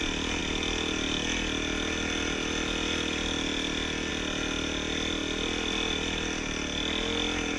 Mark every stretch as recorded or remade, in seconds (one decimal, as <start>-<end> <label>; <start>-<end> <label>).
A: 0.0-5.2 recorded; 5.2-5.7 remade; 5.7-7.6 recorded